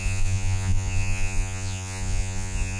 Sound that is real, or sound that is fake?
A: fake